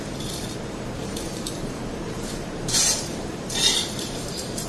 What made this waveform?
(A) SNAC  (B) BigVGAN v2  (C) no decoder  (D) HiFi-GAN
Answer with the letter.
B